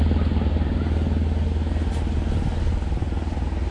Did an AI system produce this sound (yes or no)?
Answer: no